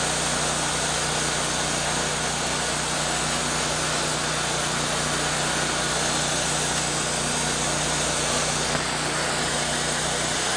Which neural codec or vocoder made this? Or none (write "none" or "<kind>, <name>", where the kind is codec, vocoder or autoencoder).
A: none